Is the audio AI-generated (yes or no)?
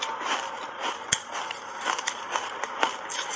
no